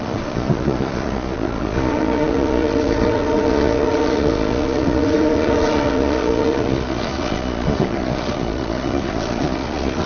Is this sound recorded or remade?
remade